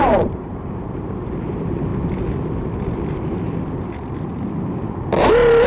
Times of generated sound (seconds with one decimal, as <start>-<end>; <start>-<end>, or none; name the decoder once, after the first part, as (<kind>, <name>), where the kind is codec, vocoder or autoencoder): 0.0-1.9 (vocoder, BigVGAN v2); 5.3-5.7